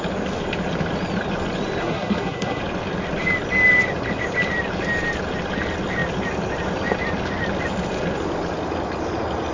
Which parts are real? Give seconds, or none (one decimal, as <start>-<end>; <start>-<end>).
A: 0.0-1.8; 2.6-9.5